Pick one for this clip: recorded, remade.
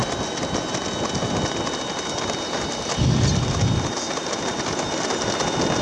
recorded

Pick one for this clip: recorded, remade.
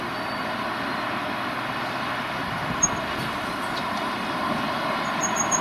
recorded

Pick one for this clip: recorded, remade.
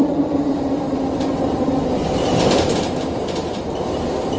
remade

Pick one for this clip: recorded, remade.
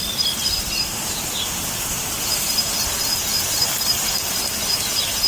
remade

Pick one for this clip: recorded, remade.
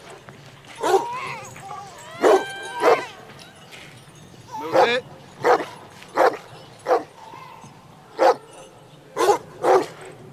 recorded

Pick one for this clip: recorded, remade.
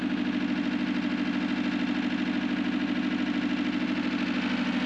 recorded